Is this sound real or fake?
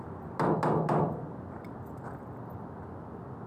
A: real